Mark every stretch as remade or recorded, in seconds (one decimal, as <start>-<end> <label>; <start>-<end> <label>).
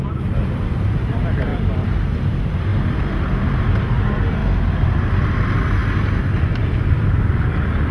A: 0.0-2.7 remade; 2.7-3.6 recorded; 3.6-4.4 remade; 4.4-5.2 recorded; 5.2-5.8 remade; 5.8-6.6 recorded; 6.6-7.9 remade